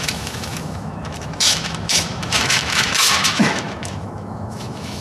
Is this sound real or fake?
fake